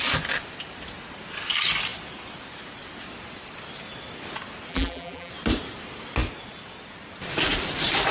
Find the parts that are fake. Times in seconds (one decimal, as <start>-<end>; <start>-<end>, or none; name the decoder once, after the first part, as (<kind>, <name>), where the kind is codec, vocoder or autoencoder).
4.7-5.3 (vocoder, BigVGAN v2)